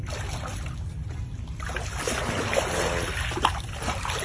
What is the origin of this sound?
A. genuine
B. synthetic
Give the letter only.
A